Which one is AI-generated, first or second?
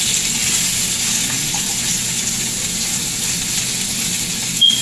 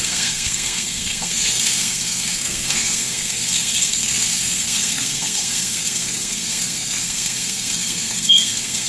second